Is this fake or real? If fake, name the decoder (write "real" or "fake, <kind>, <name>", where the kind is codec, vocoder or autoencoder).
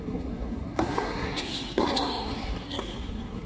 fake, codec, SNAC